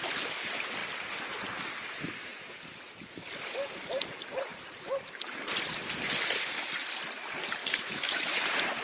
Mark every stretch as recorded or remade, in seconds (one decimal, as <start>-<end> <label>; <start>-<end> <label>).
0.0-7.6 recorded; 7.6-8.4 remade; 8.4-8.8 recorded